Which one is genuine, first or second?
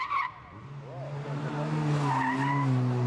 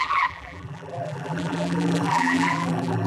first